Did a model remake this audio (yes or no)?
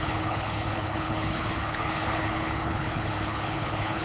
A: yes